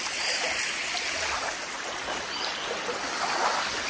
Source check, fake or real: real